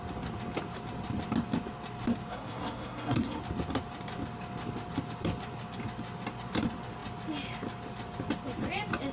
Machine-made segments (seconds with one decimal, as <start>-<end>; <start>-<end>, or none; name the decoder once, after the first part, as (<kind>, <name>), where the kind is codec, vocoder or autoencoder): 2.3-3.4 (codec, SNAC)